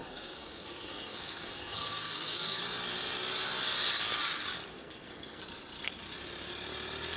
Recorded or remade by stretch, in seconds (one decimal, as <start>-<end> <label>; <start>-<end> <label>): 0.0-2.6 remade; 2.6-4.7 recorded; 4.7-5.4 remade; 5.4-7.2 recorded